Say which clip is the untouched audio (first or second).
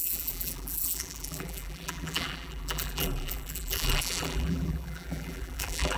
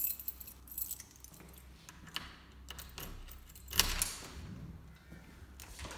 second